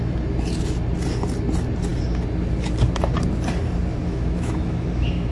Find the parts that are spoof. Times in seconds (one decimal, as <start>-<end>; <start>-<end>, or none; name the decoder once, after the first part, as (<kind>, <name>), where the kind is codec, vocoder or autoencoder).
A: 4.0-5.3 (autoencoder, DAC-VAE)